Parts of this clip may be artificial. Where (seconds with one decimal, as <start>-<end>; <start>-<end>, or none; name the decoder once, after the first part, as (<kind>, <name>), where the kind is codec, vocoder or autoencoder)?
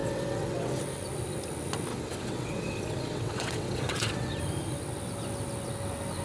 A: 0.0-0.8 (vocoder, WaveNeXt); 1.9-4.4